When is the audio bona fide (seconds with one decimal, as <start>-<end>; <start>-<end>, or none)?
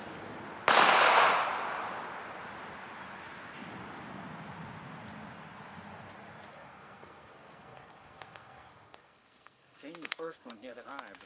0.0-6.5; 10.9-11.3